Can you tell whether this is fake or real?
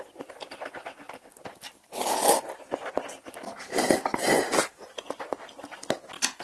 real